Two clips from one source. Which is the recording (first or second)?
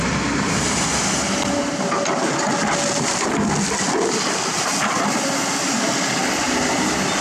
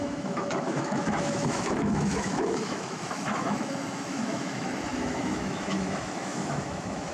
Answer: first